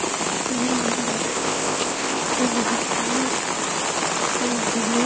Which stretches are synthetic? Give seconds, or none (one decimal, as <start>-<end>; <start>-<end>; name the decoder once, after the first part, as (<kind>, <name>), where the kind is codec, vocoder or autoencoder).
1.3-2.2 (codec, ZipCodec)